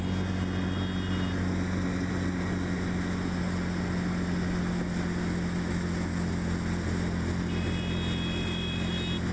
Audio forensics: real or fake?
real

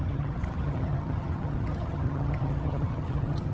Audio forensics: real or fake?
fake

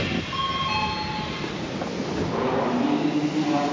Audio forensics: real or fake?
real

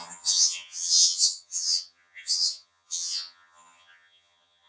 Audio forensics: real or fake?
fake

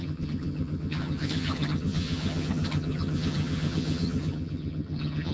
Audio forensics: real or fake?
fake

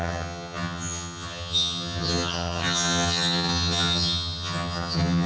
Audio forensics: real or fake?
fake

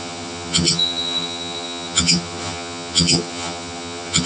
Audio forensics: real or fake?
fake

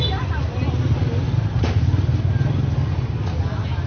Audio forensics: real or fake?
real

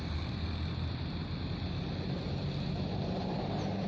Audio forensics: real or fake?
real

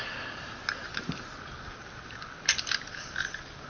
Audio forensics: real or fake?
real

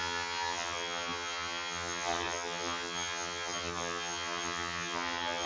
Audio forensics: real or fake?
fake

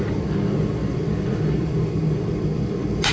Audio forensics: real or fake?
real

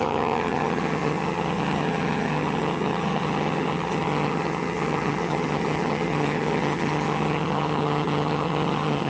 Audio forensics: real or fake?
fake